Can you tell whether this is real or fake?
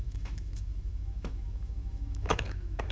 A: fake